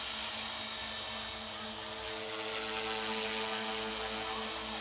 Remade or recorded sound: recorded